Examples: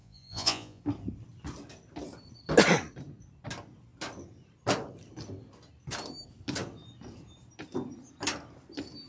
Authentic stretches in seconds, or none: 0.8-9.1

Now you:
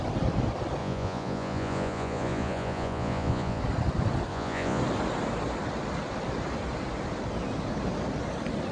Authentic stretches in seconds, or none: 0.0-0.8; 3.6-4.3; 4.8-8.7